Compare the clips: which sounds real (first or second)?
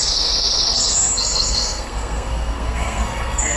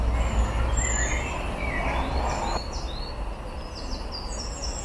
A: second